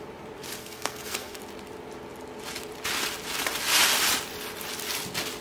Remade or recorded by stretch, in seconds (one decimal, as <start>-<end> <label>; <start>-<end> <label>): 0.0-0.6 recorded; 0.6-1.4 remade; 1.4-5.4 recorded